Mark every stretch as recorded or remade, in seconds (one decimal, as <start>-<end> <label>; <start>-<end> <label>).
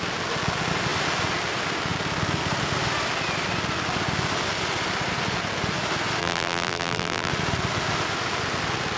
0.0-6.2 recorded; 6.2-7.3 remade; 7.3-9.0 recorded